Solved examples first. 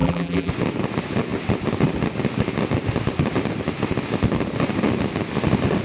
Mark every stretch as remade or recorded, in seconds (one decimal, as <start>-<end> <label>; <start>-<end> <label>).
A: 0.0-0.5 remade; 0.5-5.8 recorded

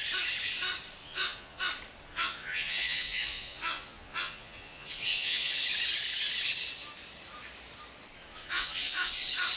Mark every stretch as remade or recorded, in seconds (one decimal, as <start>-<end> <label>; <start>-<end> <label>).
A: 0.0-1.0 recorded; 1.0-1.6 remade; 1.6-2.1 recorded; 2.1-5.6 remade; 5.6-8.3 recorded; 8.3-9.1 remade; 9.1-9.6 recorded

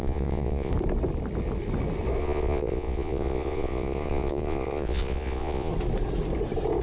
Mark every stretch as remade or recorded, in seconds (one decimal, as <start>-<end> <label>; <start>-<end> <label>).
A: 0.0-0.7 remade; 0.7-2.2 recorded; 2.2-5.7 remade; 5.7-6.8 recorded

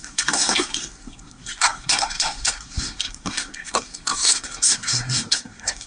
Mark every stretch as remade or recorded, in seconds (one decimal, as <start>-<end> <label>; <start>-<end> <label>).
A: 0.0-5.9 remade

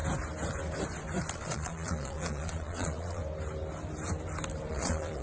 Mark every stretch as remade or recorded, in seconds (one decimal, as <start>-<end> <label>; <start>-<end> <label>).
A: 0.0-1.3 recorded; 1.3-3.2 remade; 3.2-4.7 recorded; 4.7-5.2 remade

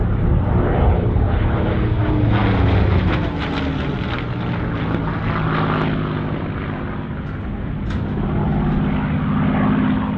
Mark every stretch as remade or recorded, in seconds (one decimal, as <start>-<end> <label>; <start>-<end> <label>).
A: 0.0-10.2 recorded

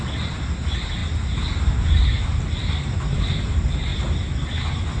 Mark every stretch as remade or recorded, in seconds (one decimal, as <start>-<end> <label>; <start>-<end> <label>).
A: 0.0-5.0 recorded

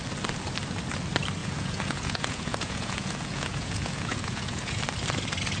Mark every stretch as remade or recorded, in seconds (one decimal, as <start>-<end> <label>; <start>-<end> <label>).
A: 0.0-1.4 recorded; 1.4-4.8 remade; 4.8-5.6 recorded